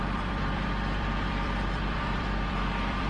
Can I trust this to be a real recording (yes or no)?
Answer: no